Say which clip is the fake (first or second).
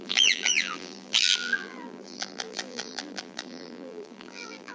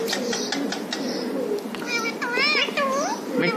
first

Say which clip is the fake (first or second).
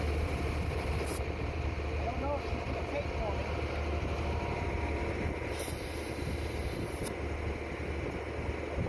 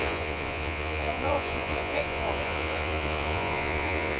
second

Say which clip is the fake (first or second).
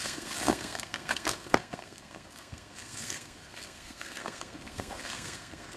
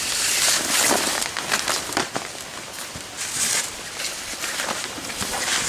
first